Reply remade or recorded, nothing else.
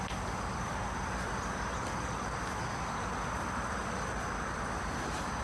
recorded